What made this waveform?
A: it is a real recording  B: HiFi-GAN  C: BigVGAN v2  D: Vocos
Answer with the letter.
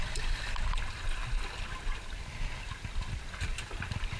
A